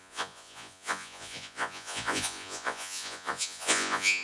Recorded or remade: remade